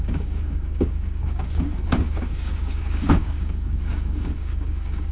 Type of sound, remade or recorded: remade